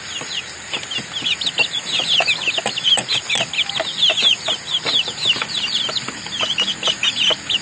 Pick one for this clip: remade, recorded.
recorded